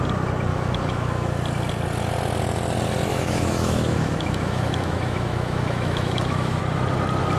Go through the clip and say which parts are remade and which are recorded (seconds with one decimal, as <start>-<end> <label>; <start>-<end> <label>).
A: 0.0-0.5 recorded; 0.5-1.3 remade; 1.3-3.1 recorded; 3.1-6.6 remade; 6.6-7.4 recorded